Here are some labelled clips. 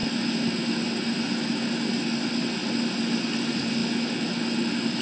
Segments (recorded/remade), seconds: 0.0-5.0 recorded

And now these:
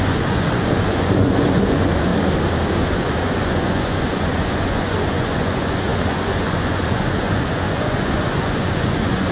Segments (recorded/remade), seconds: 0.0-2.1 remade; 2.1-2.7 recorded; 2.7-9.3 remade